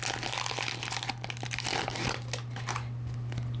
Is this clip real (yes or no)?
yes